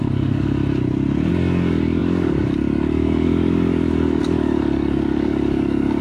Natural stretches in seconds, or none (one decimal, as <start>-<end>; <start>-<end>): 0.6-1.3